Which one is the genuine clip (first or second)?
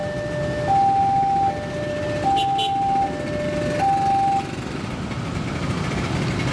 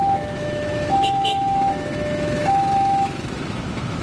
first